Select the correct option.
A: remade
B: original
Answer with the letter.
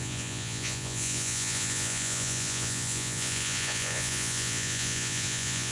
A